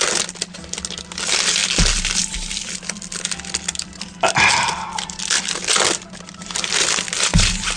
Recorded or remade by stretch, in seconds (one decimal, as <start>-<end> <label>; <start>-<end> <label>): 0.0-7.8 recorded